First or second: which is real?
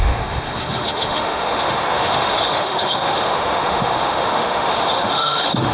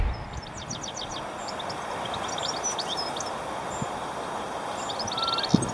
second